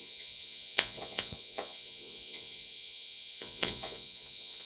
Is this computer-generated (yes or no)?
yes